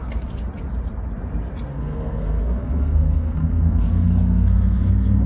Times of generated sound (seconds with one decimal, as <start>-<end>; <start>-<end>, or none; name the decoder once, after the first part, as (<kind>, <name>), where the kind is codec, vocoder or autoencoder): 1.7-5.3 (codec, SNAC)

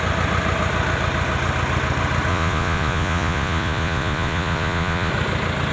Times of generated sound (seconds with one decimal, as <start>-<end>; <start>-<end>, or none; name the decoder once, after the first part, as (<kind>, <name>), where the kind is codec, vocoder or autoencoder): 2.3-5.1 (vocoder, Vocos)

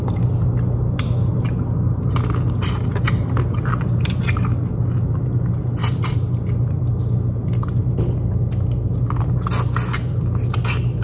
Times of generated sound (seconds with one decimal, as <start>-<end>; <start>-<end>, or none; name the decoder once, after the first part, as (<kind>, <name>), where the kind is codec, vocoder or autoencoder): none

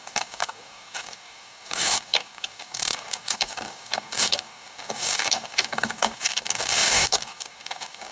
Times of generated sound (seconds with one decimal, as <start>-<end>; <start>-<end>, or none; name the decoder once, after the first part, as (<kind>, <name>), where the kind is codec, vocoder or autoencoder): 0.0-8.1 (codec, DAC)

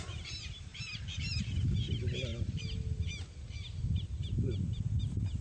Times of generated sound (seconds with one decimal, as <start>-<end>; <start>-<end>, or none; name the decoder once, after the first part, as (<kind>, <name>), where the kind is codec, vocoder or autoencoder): none

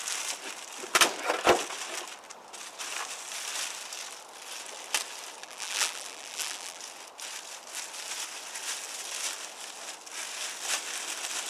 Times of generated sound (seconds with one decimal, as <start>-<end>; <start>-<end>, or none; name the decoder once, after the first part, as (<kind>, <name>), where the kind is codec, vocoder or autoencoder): 5.4-6.8 (vocoder, BigVGAN v2)

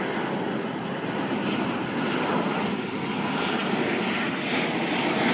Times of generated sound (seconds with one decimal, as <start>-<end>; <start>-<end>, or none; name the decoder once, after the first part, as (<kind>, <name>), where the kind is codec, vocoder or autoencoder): none